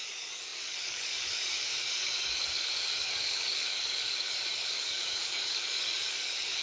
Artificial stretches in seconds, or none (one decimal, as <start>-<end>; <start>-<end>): 0.0-6.6

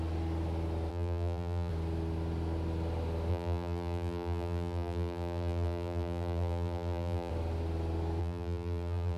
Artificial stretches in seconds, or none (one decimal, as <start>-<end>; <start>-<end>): 0.9-1.7; 3.3-7.3; 8.2-9.2

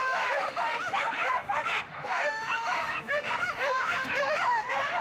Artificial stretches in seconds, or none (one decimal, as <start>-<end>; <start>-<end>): 0.0-5.0

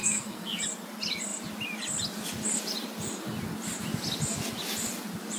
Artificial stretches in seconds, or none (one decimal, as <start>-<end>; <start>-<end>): 0.0-0.6

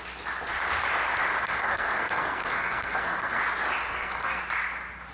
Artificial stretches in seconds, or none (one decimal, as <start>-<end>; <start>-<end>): 1.4-3.4; 3.9-4.4

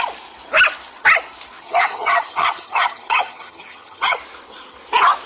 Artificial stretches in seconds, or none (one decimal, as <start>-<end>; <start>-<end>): 1.6-4.2

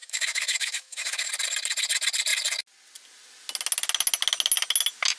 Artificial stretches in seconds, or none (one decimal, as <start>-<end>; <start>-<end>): 0.0-1.3

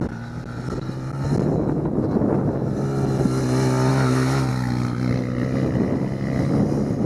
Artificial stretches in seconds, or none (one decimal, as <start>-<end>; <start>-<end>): none